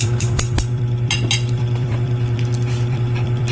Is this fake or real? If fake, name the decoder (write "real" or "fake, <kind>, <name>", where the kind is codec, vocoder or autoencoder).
fake, vocoder, BigVGAN v2